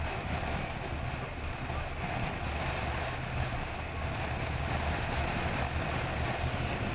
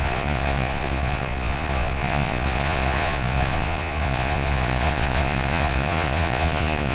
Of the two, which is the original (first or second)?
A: first